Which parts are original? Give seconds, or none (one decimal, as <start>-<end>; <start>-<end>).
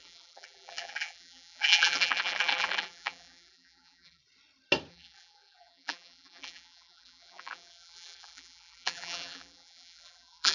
4.2-4.9